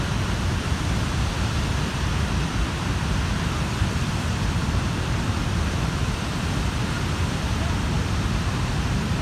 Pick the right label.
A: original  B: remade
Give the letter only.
B